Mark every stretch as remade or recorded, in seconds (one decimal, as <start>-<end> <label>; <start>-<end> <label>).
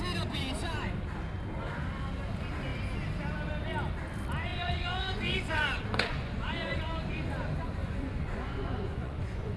0.0-4.5 recorded; 4.5-6.8 remade; 6.8-7.8 recorded; 7.8-9.6 remade